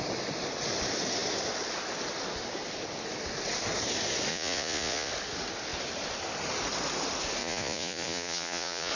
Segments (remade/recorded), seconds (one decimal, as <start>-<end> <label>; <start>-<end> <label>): 0.0-4.3 recorded; 4.3-5.1 remade; 5.1-7.4 recorded; 7.4-8.9 remade